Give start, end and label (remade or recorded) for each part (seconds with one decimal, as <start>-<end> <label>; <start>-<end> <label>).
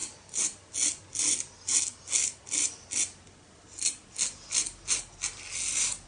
0.0-6.1 recorded